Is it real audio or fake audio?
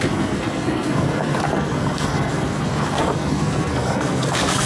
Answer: fake